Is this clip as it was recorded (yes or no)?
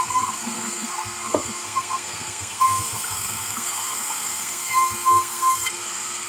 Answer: no